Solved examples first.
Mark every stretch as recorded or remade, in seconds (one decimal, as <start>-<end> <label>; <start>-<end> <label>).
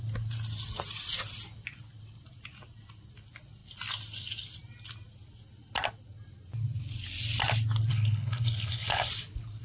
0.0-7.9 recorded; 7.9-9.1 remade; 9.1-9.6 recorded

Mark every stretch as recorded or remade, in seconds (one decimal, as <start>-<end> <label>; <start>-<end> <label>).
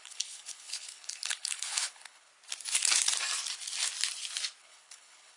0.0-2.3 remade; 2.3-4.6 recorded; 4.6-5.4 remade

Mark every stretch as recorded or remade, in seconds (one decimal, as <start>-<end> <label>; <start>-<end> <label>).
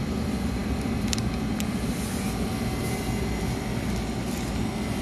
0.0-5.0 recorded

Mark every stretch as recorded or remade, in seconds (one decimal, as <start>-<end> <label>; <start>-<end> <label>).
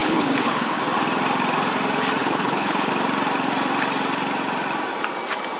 0.0-0.8 remade; 0.8-2.2 recorded; 2.2-2.9 remade; 2.9-5.6 recorded